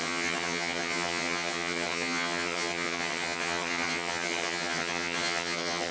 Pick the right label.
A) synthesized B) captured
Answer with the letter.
A